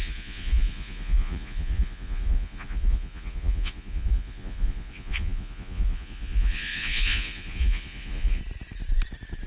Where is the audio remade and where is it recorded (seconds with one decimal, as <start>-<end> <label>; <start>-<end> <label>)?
0.0-8.4 remade; 8.4-9.5 recorded